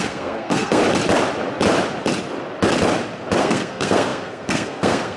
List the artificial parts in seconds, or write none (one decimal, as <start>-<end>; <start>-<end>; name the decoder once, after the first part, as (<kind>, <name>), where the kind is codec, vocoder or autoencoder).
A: 0.0-0.8 (codec, SNAC); 3.4-5.2